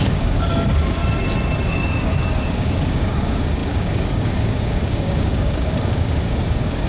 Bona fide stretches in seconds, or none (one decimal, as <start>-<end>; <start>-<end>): 1.0-1.7

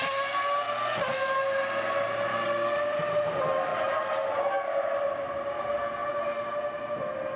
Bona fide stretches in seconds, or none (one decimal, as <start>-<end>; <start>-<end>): 0.0-2.3; 2.9-7.4